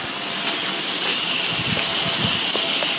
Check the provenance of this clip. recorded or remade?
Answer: recorded